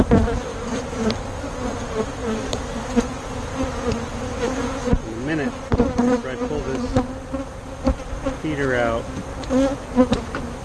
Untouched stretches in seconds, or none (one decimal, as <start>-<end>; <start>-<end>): 0.0-0.5; 1.1-2.2; 2.8-10.6